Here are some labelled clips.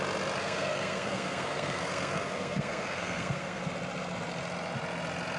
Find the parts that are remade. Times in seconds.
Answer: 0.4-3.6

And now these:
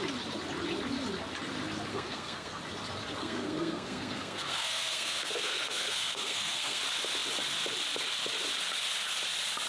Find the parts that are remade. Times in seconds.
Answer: 1.9-2.6; 3.2-6.8

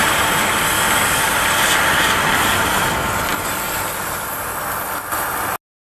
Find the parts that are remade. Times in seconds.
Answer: none

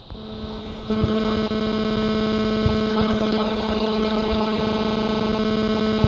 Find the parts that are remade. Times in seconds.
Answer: 0.6-1.2; 2.9-4.6

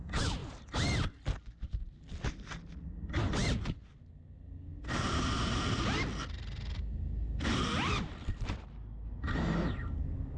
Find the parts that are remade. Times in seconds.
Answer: none

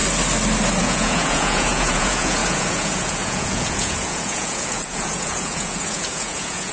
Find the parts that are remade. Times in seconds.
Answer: 0.8-6.7

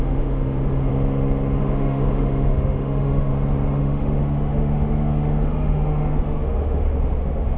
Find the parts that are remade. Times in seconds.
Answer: 0.0-0.9; 1.6-3.3; 3.8-7.6